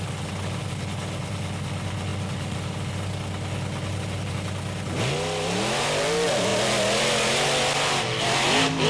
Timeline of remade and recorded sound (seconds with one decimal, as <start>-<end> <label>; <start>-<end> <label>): 0.0-8.9 recorded